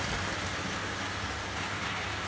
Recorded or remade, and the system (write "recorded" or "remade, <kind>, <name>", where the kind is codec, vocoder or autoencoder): recorded